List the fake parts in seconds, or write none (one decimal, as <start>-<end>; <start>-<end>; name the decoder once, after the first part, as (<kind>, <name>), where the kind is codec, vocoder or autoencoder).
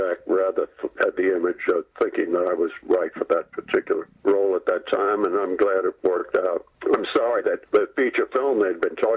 2.3-4.1 (vocoder, BigVGAN v2)